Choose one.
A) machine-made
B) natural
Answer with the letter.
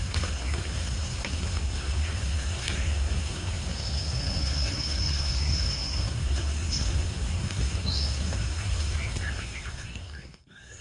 A